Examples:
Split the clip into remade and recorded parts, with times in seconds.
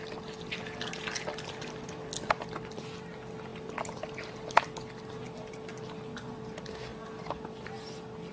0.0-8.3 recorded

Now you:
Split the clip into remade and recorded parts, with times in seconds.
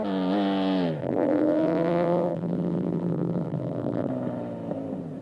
0.0-1.0 recorded; 1.0-4.1 remade; 4.1-5.2 recorded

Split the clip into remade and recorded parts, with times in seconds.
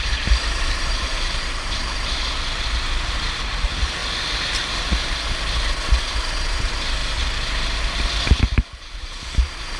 0.0-4.0 remade; 4.0-6.0 recorded; 6.0-7.0 remade; 7.0-8.4 recorded; 8.4-9.8 remade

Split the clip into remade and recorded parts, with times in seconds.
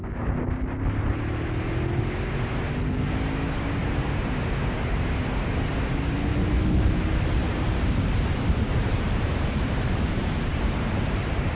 0.0-6.3 recorded; 6.3-11.5 remade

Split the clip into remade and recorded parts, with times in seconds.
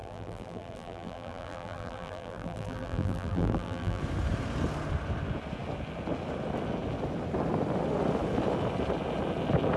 0.0-4.0 remade; 4.0-9.8 recorded